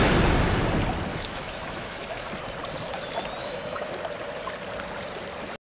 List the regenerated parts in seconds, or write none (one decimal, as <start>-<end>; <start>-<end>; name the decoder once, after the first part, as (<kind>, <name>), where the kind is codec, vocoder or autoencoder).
1.1-2.3 (autoencoder, DAC-VAE); 3.4-3.9